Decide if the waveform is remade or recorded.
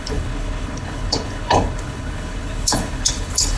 remade